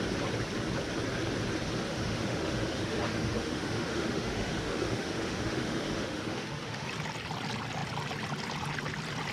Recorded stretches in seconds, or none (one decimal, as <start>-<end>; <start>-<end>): 0.0-1.9; 6.9-9.3